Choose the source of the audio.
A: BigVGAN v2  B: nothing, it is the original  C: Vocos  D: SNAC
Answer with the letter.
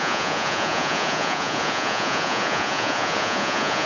C